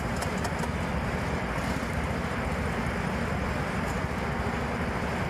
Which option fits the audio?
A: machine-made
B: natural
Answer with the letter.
B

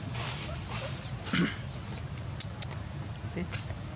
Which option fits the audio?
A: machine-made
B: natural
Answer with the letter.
B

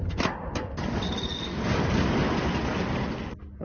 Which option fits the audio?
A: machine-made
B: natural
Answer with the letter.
B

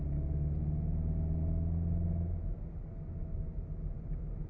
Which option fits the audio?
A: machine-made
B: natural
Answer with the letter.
B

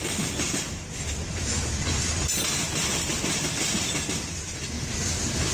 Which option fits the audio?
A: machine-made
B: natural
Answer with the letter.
B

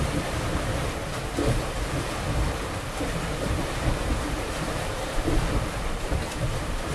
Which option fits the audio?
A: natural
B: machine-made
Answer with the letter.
B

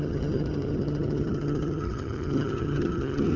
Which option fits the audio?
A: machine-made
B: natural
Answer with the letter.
A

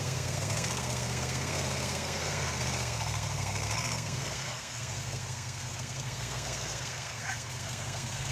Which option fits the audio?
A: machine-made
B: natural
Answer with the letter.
A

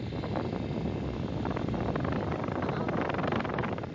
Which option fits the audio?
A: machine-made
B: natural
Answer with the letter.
B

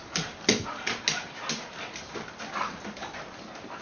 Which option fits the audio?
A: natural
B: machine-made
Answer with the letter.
A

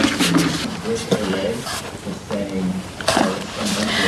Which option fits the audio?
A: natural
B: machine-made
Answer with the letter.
A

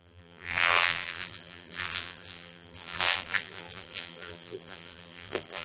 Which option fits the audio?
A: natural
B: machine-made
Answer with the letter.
B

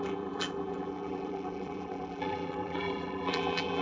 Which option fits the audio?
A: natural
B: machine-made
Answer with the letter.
B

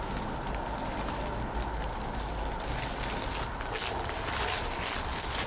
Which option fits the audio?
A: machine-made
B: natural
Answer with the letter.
B